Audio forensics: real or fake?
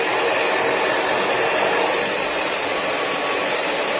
real